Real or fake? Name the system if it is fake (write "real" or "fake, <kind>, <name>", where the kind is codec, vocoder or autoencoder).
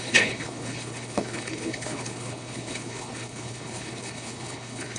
fake, codec, HILCodec